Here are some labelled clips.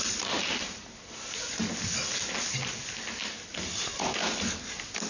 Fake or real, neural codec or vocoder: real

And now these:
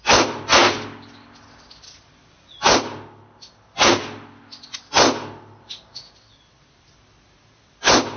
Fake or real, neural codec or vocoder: real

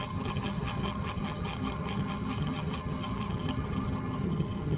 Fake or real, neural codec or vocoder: fake, vocoder, HiFi-GAN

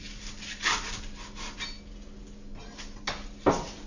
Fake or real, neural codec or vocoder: real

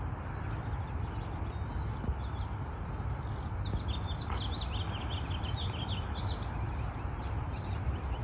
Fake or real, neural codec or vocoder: real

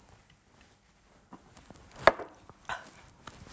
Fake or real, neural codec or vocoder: real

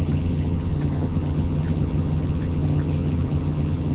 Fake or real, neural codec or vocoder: fake, vocoder, HiFi-GAN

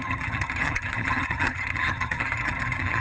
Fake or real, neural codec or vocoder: fake, vocoder, HiFi-GAN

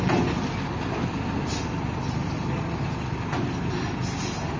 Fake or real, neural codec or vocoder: real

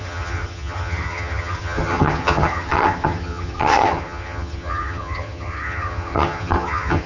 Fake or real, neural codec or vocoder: fake, vocoder, HiFi-GAN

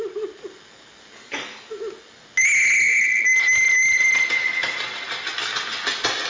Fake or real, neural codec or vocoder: real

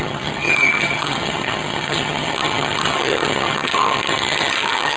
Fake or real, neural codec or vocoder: fake, vocoder, HiFi-GAN